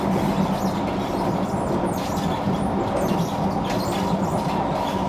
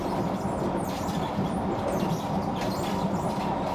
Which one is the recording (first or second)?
first